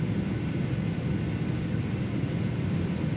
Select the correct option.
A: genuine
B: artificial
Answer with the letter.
A